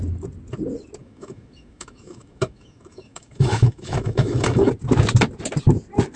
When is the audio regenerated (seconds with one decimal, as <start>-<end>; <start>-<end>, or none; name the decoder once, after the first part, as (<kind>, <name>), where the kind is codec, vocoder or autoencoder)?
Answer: 1.0-4.7 (autoencoder, DAC-VAE)